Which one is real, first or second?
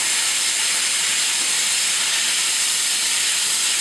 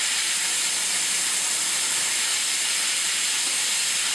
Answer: first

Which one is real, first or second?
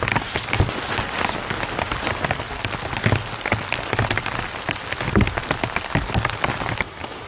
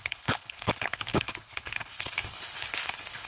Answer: first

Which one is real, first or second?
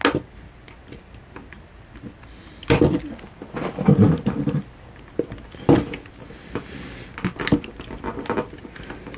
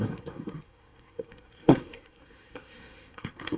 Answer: first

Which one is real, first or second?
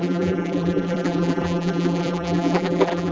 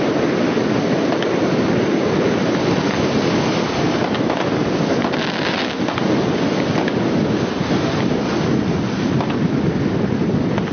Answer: second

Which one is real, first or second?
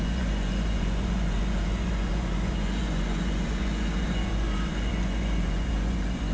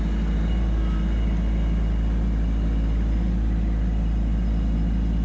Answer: second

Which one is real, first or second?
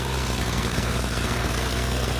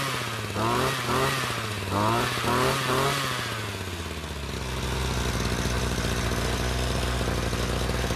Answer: second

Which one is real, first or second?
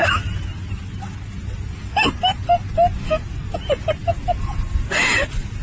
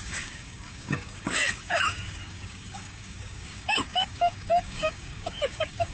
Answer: first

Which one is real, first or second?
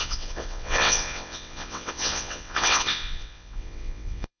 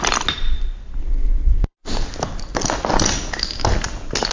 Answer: second